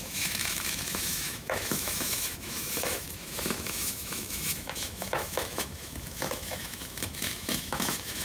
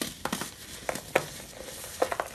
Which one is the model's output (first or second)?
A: first